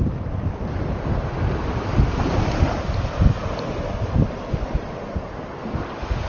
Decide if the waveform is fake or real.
real